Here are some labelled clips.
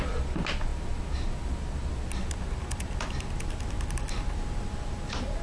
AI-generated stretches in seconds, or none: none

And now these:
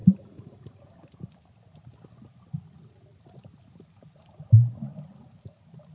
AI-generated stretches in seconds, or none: 0.0-0.8 (vocoder, BigVGAN v2)

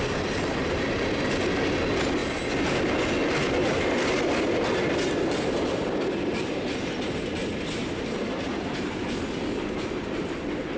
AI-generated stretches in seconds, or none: none